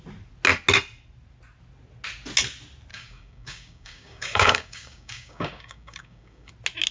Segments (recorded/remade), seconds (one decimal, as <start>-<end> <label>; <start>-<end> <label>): 0.0-2.9 recorded; 2.9-6.5 remade; 6.5-6.9 recorded